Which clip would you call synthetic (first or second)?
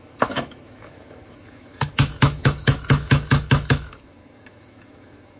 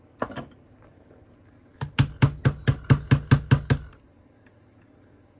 first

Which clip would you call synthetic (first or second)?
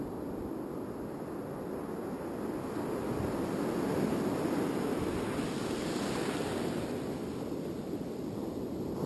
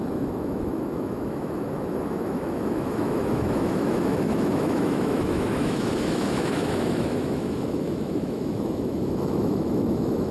second